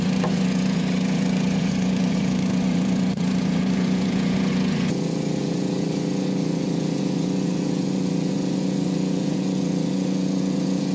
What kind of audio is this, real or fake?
fake